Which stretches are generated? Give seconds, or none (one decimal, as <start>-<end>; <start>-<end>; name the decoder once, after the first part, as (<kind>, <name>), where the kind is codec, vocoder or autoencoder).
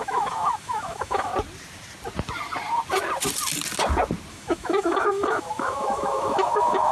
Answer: 0.0-1.3 (autoencoder, DAC-VAE); 4.3-6.9